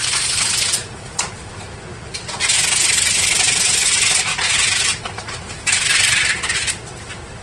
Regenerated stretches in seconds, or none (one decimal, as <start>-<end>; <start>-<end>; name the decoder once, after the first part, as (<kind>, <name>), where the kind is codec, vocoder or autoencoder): none